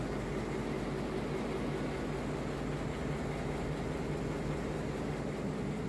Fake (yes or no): no